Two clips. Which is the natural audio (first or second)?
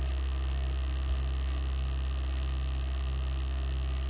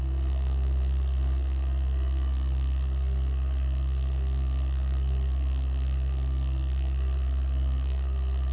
first